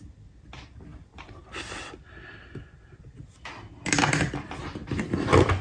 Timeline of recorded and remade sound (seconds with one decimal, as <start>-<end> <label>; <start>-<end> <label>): 0.0-5.6 recorded